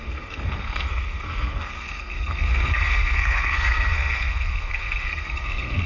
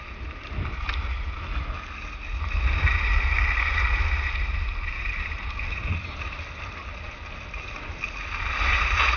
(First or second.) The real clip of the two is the second